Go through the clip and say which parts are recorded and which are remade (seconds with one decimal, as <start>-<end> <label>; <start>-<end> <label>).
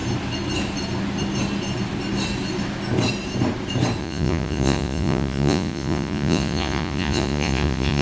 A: 0.0-4.0 recorded; 4.0-8.0 remade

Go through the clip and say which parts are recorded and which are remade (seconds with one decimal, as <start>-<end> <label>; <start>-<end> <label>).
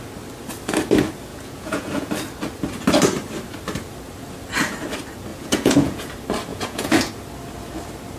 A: 0.0-1.3 recorded; 1.3-2.1 remade; 2.1-5.3 recorded; 5.3-6.1 remade; 6.1-6.5 recorded; 6.5-7.1 remade; 7.1-8.2 recorded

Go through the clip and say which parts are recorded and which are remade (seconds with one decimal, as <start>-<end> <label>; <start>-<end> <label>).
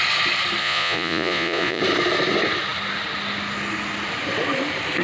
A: 0.0-0.6 recorded; 0.6-1.8 remade; 1.8-5.0 recorded